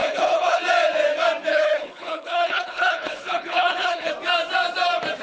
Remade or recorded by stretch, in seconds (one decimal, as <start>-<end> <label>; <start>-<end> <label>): 0.0-0.6 remade; 0.6-1.5 recorded; 1.5-4.1 remade; 4.1-5.2 recorded